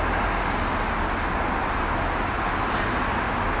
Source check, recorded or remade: recorded